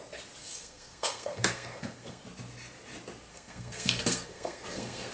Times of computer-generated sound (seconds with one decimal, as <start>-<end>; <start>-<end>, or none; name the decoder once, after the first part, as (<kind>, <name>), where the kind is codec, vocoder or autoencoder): 0.4-2.2 (codec, SNAC); 3.3-5.1